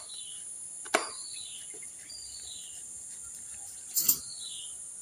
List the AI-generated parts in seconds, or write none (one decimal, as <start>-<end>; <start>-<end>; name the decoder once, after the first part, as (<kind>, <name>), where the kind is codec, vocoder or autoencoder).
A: 1.2-4.2 (vocoder, BigVGAN v2)